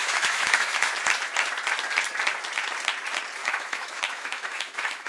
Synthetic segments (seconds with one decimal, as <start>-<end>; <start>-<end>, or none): 0.0-0.9; 3.4-5.1